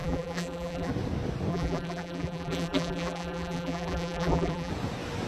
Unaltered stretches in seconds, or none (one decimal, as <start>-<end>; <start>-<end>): 0.9-1.5; 4.7-5.3